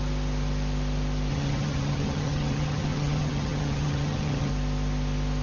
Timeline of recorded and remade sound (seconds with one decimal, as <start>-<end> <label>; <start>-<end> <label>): 0.0-1.3 recorded; 1.3-4.5 remade; 4.5-5.4 recorded